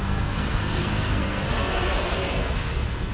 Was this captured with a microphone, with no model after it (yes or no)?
no